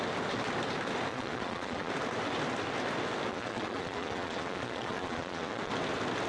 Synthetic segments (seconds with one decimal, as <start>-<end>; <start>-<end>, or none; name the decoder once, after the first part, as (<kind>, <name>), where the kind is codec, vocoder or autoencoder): 1.1-1.9 (vocoder, Vocos); 3.3-5.7